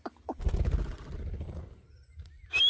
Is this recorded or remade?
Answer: recorded